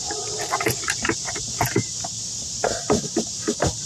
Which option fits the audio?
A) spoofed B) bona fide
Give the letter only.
A